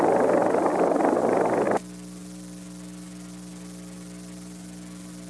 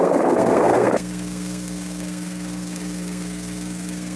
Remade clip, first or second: second